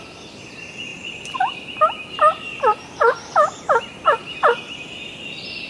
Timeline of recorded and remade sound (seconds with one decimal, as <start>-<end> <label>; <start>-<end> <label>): 0.0-0.9 recorded; 0.9-3.6 remade; 3.6-5.7 recorded